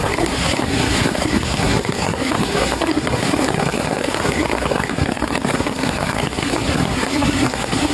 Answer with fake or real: fake